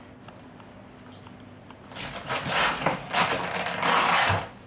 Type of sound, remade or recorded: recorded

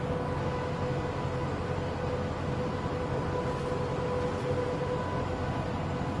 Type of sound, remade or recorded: recorded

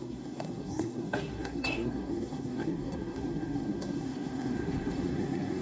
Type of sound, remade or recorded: remade